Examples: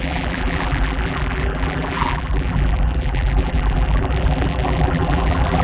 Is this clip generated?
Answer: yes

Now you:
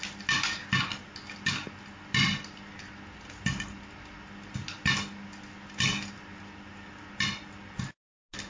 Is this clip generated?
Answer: no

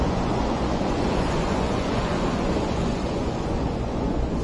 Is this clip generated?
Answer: yes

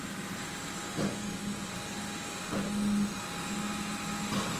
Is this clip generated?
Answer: no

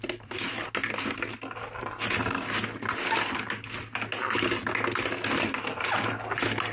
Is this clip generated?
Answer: no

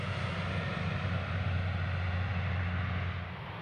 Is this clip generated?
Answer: no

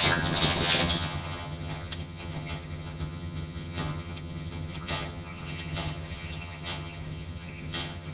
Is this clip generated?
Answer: yes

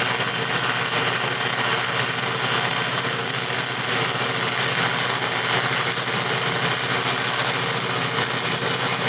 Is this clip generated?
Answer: no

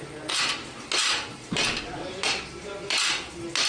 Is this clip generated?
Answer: no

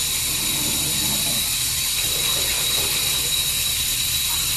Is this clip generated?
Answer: no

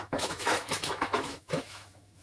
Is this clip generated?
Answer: yes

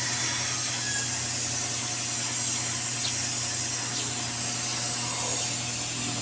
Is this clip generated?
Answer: no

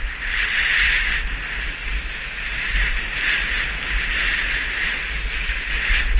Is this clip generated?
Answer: no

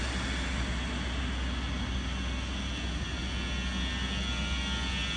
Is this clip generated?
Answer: no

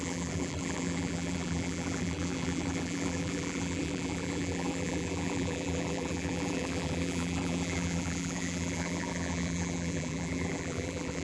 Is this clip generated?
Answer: yes